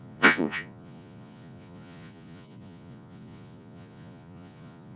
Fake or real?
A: fake